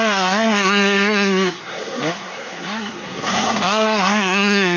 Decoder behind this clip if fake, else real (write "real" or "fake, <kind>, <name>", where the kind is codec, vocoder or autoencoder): fake, codec, SNAC